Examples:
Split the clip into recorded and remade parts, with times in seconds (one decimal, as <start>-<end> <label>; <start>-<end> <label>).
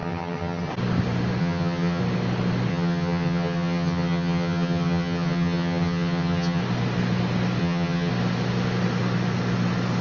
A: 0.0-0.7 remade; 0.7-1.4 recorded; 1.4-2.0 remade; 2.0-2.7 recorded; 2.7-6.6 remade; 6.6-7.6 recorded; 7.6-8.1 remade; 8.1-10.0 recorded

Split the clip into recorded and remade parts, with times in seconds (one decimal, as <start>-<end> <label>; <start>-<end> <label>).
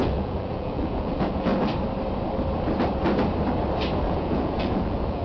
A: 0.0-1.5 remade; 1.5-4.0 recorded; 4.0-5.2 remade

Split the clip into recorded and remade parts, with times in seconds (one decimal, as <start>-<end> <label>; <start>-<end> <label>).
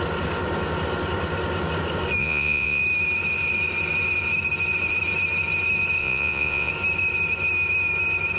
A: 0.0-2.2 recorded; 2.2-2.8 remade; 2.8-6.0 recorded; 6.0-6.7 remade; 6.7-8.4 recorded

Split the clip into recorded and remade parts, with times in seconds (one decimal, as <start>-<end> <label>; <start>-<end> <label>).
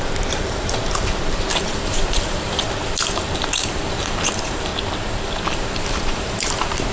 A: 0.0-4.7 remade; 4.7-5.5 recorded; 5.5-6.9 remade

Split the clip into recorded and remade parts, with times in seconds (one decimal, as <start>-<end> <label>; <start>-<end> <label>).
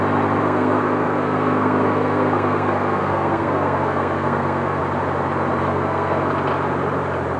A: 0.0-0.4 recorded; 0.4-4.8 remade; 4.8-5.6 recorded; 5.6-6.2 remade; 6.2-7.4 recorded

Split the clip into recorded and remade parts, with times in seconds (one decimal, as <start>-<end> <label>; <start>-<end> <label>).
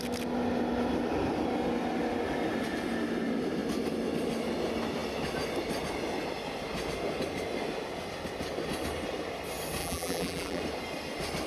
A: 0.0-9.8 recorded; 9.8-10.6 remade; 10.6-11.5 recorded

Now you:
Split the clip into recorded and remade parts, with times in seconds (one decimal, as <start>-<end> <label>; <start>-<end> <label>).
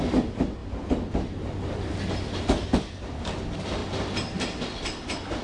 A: 0.0-5.4 recorded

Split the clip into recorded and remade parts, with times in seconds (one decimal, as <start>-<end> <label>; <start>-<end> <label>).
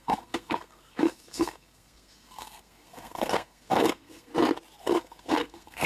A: 0.0-4.3 remade; 4.3-4.8 recorded; 4.8-5.9 remade